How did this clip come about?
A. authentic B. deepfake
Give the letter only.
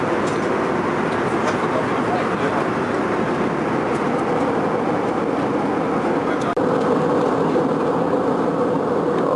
A